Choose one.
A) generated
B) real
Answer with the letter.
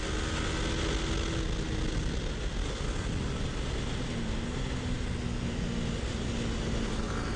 B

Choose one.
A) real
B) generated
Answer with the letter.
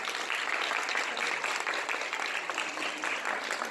A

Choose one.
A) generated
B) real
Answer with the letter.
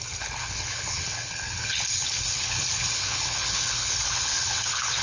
A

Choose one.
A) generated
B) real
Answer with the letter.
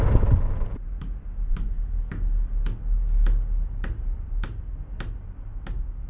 B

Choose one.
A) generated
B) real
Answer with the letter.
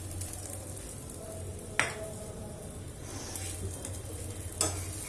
B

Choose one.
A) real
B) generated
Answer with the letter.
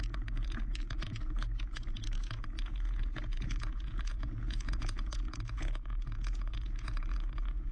B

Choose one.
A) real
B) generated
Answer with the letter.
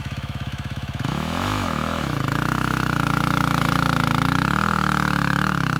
B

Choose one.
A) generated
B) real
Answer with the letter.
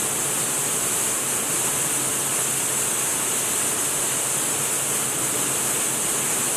B